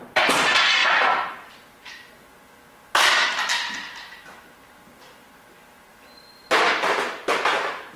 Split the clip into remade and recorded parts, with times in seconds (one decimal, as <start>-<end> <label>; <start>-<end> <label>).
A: 0.0-8.0 recorded